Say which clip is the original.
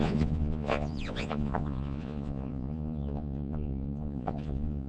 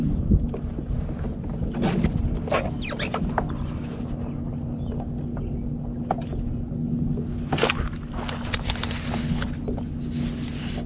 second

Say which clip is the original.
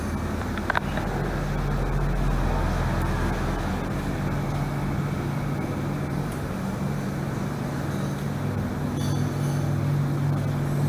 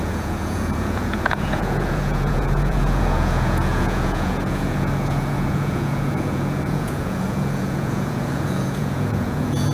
first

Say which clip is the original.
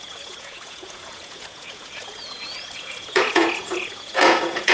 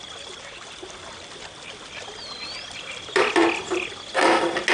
second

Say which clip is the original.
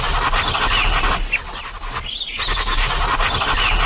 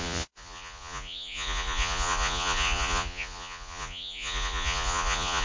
first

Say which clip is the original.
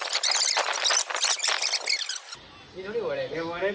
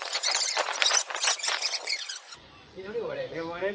first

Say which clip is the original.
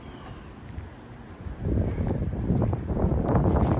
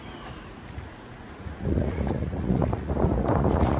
first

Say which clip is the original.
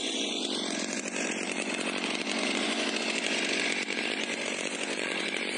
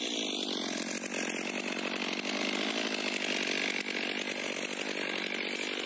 second